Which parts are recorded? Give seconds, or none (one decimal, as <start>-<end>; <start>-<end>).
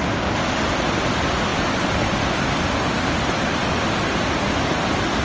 0.0-5.2